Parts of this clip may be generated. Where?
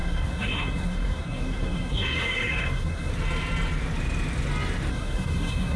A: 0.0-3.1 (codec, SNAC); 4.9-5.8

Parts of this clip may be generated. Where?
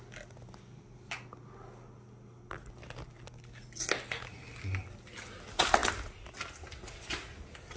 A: none